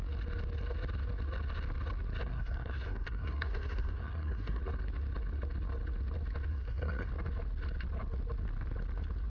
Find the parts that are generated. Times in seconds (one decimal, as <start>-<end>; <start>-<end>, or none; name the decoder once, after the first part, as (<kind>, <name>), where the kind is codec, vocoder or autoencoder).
2.2-4.6 (codec, SNAC); 6.5-7.1